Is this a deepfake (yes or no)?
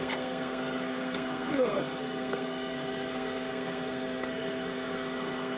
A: yes